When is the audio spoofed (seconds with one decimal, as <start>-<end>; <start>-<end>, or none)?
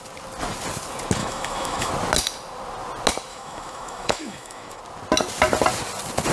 1.2-1.9; 3.3-4.8